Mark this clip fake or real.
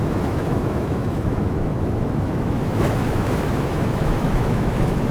fake